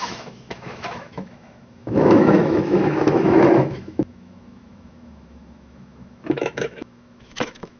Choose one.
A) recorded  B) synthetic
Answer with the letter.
B